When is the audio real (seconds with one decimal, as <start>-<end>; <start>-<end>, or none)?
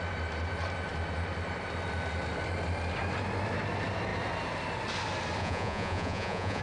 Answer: 0.0-5.4